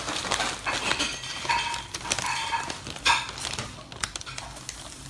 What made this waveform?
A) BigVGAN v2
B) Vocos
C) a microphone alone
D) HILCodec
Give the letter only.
C